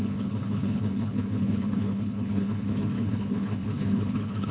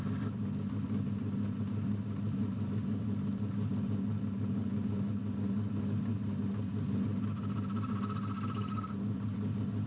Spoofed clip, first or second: first